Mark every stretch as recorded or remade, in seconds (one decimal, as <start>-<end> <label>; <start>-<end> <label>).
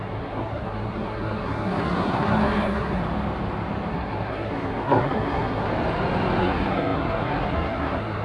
0.0-3.0 remade; 3.0-3.9 recorded; 3.9-5.7 remade; 5.7-6.4 recorded; 6.4-8.2 remade